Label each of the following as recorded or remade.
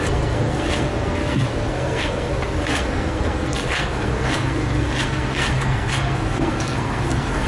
remade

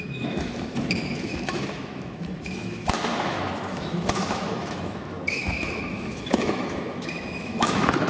remade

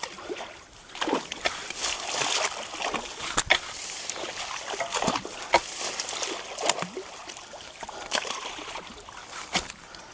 recorded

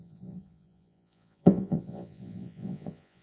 remade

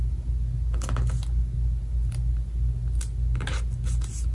recorded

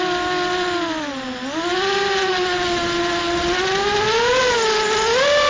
recorded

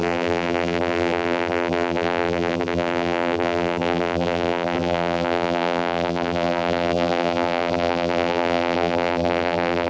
remade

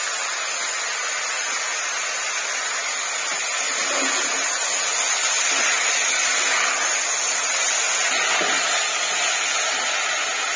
recorded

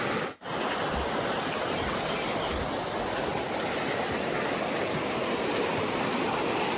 recorded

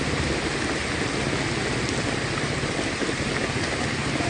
recorded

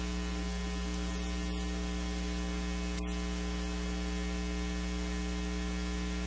recorded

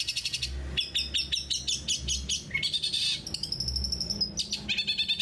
recorded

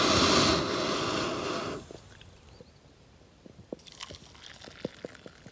recorded